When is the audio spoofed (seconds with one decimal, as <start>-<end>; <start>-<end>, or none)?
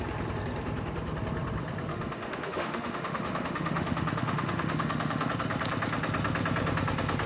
1.9-5.3